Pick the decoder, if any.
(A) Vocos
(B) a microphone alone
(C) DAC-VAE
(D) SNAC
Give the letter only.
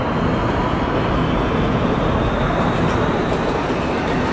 B